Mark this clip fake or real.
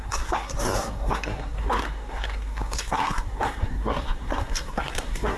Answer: fake